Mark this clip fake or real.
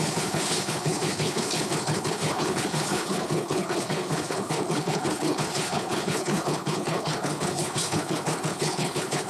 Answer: fake